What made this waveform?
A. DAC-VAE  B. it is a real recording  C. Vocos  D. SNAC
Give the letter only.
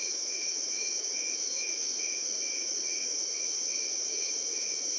A